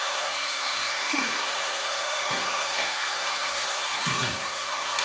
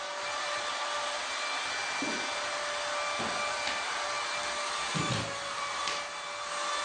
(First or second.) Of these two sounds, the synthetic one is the first